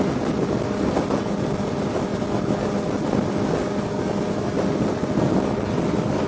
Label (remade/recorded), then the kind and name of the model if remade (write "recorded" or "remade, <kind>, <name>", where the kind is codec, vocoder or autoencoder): recorded